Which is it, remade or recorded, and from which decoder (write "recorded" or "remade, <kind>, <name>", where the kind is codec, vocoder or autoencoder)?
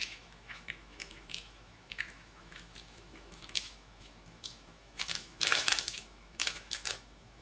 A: remade, autoencoder, DAC-VAE